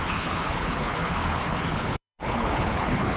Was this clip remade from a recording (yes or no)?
yes